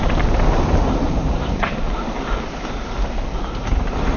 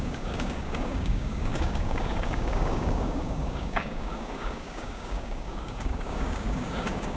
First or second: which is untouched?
first